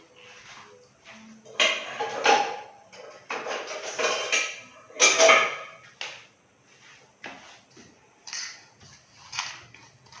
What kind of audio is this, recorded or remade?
recorded